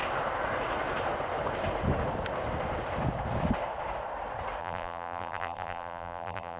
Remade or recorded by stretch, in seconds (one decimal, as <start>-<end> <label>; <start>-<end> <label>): 0.0-4.6 recorded; 4.6-6.6 remade